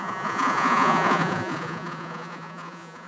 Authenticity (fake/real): fake